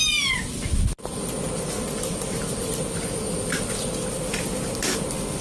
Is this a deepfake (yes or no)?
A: no